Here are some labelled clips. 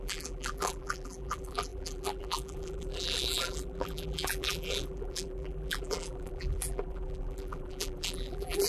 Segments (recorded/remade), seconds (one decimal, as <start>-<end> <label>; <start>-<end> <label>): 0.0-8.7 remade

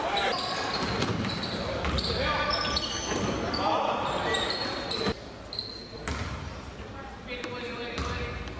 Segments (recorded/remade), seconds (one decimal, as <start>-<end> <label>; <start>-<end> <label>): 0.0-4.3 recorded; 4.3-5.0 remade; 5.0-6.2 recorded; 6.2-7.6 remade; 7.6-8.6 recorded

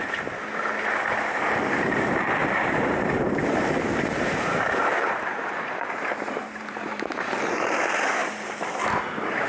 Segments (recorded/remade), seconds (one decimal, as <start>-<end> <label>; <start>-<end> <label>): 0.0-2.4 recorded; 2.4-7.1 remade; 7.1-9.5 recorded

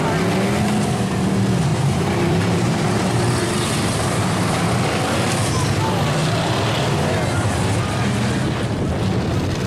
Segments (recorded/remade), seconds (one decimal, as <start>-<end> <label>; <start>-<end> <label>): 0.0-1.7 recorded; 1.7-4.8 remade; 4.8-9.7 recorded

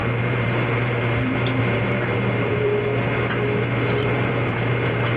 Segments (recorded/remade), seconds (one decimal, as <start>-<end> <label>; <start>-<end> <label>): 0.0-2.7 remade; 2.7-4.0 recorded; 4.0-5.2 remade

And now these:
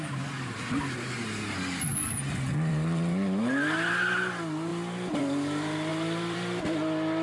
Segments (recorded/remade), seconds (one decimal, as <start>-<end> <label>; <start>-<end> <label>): 0.0-5.9 recorded; 5.9-6.6 remade; 6.6-7.2 recorded

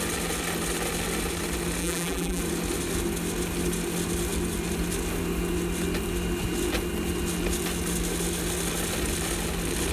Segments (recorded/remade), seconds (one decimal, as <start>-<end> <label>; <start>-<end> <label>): 0.0-1.8 recorded; 1.8-2.4 remade; 2.4-9.9 recorded